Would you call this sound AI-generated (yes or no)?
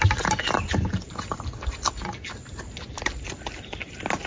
no